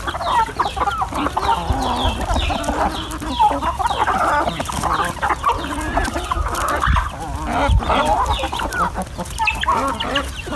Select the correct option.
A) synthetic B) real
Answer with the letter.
B